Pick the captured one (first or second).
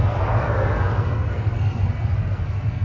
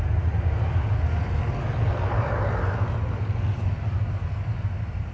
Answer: second